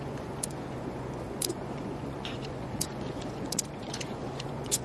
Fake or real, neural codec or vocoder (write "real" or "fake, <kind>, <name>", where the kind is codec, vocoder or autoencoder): fake, vocoder, Vocos